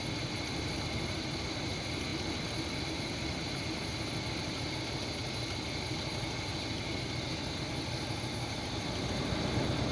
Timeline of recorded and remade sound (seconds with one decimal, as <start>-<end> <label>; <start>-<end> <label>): 0.0-9.9 recorded